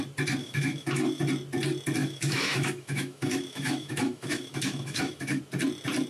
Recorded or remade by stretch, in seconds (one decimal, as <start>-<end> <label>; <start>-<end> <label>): 0.0-0.4 recorded; 0.4-1.2 remade; 1.2-2.0 recorded; 2.0-5.4 remade; 5.4-6.1 recorded